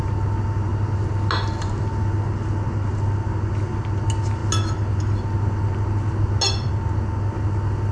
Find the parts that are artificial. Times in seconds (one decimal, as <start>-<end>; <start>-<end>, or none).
none